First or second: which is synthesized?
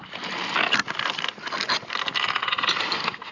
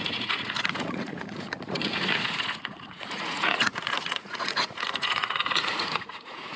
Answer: second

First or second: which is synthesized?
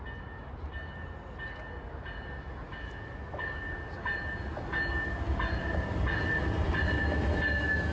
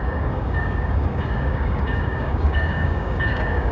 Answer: second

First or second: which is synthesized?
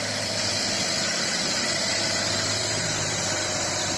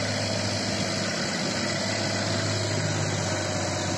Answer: first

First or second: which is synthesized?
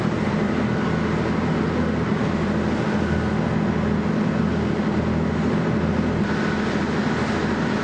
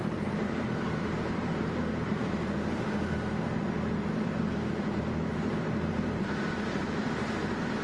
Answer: second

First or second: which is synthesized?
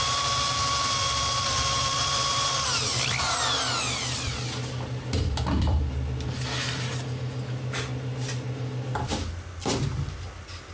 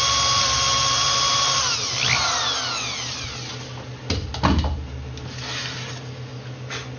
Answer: first